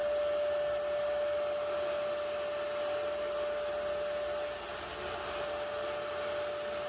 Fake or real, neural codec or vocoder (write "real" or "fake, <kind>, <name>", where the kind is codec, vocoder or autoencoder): real